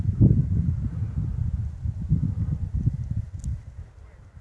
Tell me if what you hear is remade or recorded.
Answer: recorded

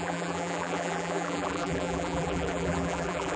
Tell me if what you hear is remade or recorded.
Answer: remade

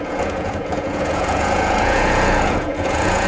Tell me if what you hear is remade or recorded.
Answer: remade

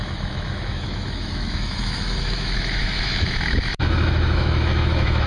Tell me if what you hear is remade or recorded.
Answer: remade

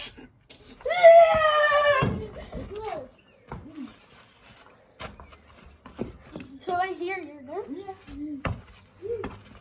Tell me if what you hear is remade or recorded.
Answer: recorded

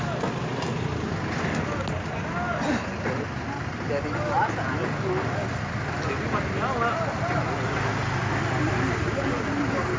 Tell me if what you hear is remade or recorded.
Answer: recorded